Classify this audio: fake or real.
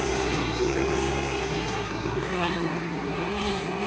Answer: fake